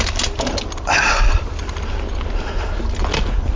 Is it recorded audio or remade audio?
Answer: recorded